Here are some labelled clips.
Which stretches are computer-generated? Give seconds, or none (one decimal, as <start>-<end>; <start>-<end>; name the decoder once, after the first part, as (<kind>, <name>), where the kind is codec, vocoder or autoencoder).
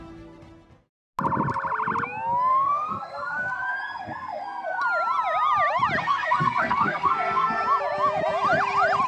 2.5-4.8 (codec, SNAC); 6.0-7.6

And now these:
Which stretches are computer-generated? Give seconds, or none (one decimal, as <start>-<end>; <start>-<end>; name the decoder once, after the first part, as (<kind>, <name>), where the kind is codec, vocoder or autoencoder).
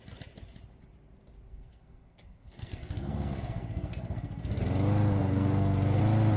1.5-4.6 (codec, SNAC); 5.2-6.0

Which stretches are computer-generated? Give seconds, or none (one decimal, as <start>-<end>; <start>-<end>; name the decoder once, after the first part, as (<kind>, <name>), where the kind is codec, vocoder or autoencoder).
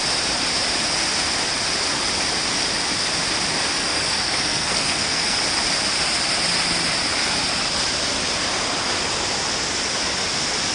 3.8-5.4 (codec, SNAC)